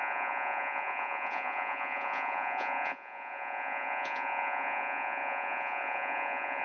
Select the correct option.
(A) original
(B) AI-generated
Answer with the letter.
B